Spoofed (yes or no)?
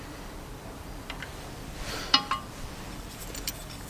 yes